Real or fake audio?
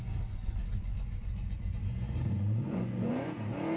fake